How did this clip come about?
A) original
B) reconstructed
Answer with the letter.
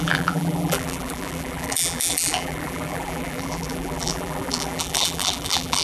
B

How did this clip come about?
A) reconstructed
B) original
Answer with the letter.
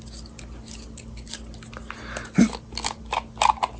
B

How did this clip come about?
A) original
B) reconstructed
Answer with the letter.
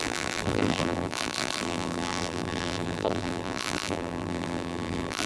B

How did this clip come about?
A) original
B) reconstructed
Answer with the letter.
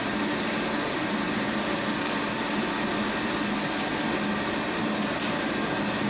A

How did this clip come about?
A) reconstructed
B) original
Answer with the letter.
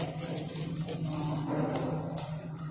B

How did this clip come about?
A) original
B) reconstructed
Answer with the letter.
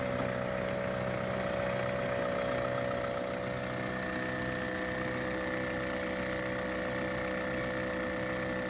A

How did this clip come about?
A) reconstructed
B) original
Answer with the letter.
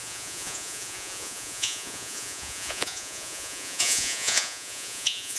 A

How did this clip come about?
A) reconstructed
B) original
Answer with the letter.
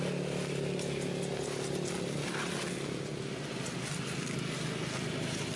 B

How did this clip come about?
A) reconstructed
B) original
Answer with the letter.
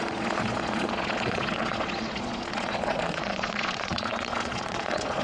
A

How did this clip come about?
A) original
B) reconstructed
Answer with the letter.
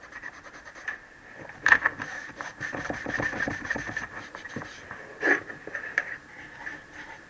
B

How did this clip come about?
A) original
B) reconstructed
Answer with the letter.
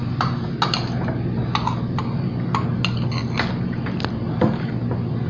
A